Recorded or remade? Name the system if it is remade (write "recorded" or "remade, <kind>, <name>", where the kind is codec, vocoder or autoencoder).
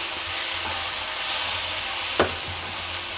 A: recorded